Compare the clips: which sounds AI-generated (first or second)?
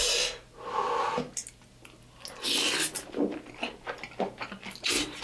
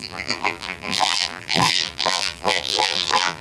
second